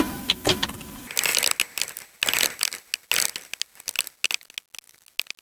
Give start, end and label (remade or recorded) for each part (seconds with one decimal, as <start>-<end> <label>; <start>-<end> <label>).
0.0-5.4 recorded